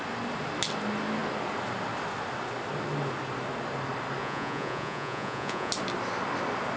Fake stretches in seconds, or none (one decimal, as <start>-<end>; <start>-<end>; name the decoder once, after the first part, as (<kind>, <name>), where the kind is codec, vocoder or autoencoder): 4.2-5.7 (vocoder, Vocos)